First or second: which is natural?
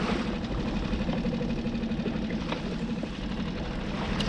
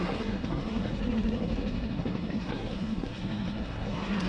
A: first